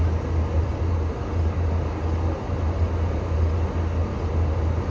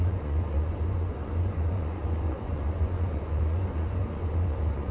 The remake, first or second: second